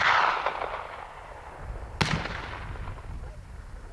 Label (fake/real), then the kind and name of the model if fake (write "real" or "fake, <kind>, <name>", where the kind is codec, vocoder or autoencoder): real